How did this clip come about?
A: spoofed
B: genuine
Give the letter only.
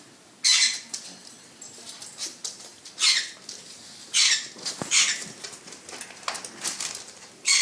B